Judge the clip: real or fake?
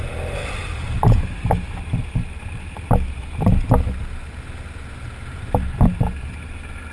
real